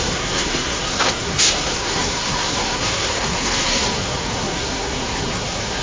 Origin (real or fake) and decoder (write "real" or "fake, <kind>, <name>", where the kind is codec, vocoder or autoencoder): fake, codec, SNAC